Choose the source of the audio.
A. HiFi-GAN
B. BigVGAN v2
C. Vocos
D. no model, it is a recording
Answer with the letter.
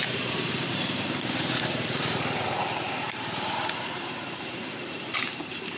B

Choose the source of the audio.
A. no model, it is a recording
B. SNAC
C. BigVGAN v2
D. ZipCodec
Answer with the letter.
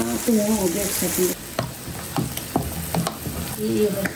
A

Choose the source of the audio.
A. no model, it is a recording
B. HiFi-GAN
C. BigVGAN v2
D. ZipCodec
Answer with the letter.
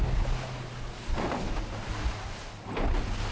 A